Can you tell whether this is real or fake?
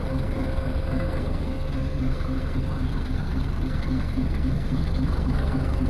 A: fake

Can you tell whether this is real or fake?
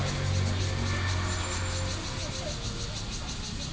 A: real